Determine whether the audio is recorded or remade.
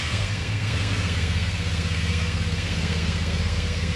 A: remade